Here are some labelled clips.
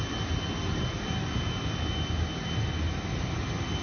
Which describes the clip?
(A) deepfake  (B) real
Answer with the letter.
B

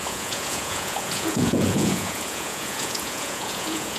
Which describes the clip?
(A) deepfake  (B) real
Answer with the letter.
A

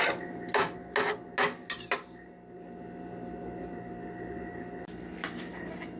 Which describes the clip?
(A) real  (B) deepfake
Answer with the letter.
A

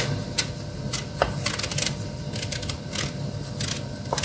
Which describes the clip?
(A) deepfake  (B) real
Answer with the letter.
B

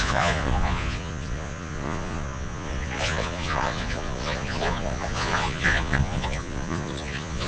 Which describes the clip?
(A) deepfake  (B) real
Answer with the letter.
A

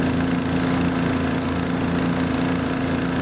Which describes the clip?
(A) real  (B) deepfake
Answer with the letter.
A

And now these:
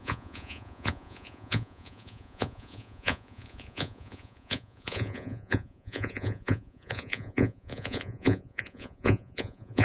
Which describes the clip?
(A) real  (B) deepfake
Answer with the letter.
B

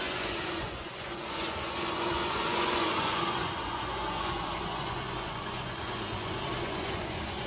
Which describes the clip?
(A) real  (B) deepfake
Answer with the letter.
B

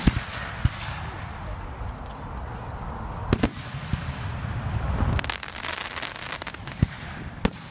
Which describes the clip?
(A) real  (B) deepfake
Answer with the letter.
A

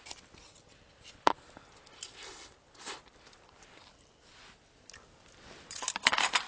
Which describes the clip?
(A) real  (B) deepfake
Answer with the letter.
A